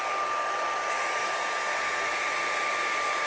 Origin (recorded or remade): recorded